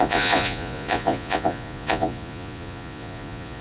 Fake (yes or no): yes